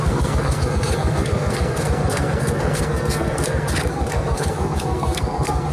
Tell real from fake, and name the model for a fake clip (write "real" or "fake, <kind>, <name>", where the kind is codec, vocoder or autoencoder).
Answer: fake, codec, SNAC